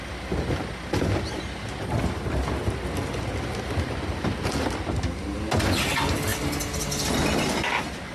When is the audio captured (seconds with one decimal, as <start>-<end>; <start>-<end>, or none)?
0.0-8.1